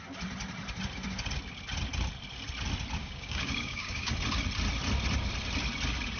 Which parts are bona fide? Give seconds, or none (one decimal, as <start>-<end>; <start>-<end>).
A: 0.0-3.0; 4.1-6.2